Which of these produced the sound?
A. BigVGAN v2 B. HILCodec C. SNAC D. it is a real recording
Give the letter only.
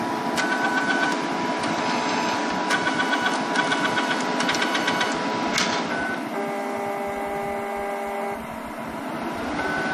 D